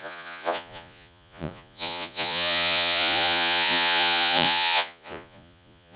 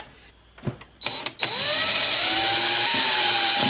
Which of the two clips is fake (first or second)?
first